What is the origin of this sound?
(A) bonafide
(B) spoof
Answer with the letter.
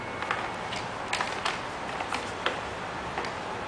A